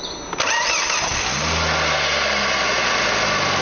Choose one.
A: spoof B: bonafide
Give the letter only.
B